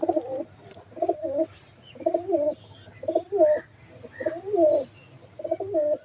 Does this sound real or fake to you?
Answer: real